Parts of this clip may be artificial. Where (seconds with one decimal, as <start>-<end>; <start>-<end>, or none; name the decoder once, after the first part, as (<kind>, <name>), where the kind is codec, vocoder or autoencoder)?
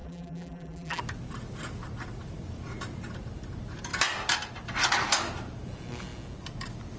0.0-1.0 (vocoder, BigVGAN v2)